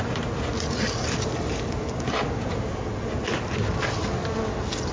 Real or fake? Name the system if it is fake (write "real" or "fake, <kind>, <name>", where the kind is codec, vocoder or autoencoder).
real